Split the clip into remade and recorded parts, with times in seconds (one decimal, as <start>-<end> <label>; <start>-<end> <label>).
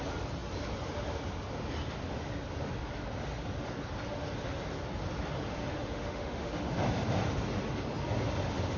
0.0-5.6 recorded; 5.6-6.7 remade; 6.7-8.8 recorded